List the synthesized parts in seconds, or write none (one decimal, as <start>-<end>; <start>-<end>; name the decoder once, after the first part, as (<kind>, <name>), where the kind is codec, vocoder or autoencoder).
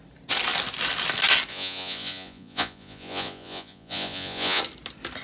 1.5-4.6 (vocoder, Vocos)